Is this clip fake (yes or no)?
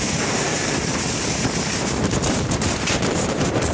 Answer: yes